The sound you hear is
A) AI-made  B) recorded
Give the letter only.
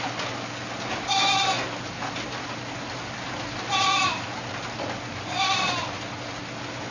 B